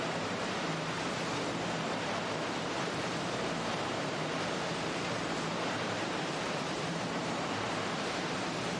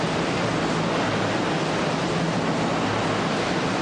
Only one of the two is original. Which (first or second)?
second